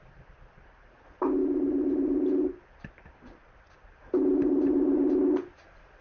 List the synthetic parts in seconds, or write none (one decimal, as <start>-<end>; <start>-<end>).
none